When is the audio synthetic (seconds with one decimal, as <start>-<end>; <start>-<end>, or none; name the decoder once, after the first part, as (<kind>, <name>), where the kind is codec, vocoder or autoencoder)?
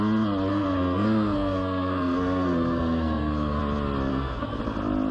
0.5-3.6 (codec, SNAC); 4.1-4.6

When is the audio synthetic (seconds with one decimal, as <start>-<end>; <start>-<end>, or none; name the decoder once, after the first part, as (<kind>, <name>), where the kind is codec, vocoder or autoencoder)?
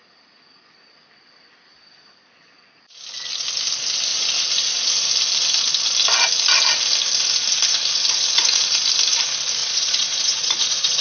9.6-11.0 (vocoder, Vocos)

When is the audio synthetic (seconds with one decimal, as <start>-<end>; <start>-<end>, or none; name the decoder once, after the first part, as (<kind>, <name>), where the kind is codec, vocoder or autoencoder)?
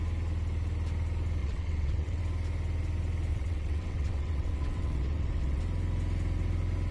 1.4-2.2 (vocoder, WaveNeXt); 3.3-5.6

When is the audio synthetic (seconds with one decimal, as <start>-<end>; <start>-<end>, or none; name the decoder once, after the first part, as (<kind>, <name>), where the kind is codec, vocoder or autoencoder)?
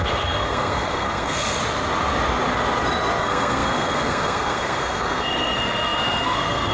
0.0-1.6 (codec, SNAC); 3.2-6.7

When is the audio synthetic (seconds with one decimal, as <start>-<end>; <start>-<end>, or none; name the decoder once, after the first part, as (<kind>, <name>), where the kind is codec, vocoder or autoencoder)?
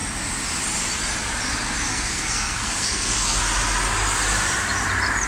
1.9-3.4 (codec, SNAC)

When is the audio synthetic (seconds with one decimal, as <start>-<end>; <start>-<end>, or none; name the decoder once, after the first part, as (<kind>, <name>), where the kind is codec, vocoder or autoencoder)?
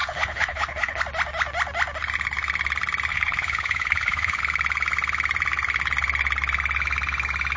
0.0-1.0 (codec, HILCodec); 3.1-4.4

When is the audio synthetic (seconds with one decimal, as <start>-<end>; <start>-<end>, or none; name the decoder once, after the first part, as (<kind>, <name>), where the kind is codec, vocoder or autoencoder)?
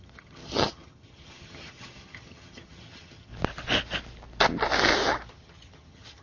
0.0-3.3 (vocoder, HiFi-GAN); 5.3-6.2